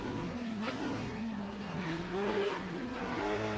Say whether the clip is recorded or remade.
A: remade